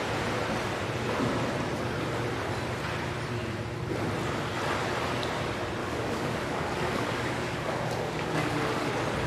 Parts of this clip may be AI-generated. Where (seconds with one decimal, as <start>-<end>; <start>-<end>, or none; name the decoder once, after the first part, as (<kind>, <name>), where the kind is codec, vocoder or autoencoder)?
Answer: 5.8-8.9 (codec, DAC)